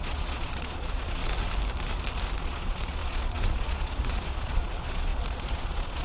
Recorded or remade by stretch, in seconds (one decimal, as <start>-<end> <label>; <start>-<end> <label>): 0.0-1.2 remade; 1.2-2.4 recorded; 2.4-6.0 remade